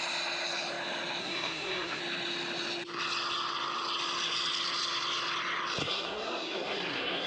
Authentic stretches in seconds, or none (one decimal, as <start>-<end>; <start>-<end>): 0.0-1.2; 2.0-5.8